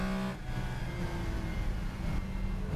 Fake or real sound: real